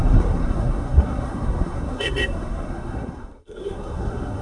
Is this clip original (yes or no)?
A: no